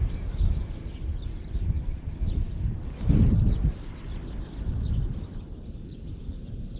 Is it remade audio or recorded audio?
recorded